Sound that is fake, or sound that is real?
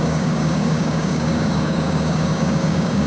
fake